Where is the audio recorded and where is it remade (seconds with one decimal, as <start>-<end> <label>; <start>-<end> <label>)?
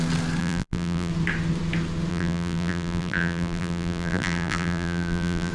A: 0.0-0.4 recorded; 0.4-1.1 remade; 1.1-2.1 recorded; 2.1-5.5 remade